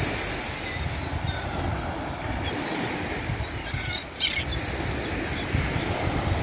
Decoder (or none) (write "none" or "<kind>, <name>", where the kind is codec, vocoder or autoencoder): none